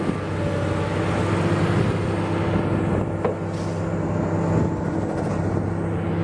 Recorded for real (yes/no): yes